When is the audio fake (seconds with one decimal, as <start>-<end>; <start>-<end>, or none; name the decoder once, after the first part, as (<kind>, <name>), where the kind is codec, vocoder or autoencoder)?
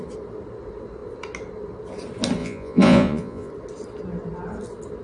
2.4-3.5 (vocoder, Vocos)